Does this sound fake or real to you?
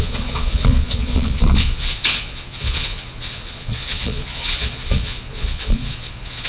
fake